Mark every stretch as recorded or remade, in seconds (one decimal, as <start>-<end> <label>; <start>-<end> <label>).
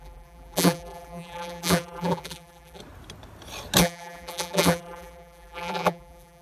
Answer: 0.0-2.8 remade; 2.8-3.8 recorded; 3.8-6.4 remade